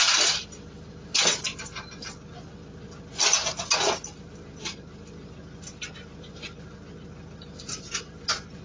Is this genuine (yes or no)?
yes